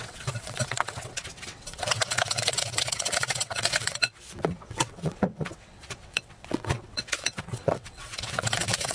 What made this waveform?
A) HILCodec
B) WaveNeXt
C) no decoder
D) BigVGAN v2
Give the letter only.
B